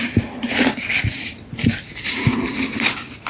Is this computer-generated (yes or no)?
no